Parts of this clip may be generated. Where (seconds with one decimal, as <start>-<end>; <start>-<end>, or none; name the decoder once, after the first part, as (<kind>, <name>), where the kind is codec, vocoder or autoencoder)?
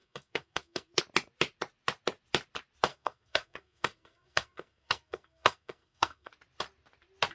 0.0-1.0 (codec, SNAC); 2.9-6.3